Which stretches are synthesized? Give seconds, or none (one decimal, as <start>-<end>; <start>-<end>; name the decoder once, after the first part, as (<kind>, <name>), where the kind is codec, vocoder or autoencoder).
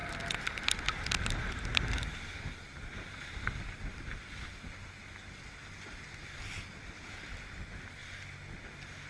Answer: none